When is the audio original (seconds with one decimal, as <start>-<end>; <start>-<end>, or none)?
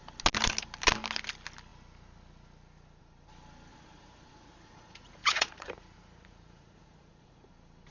0.0-3.7; 7.5-7.9